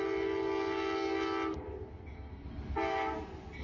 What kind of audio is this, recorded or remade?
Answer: recorded